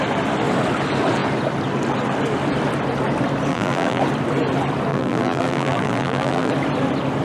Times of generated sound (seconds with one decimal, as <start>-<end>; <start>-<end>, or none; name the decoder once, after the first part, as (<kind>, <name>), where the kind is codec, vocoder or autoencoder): 3.5-4.0 (vocoder, BigVGAN v2); 4.9-6.5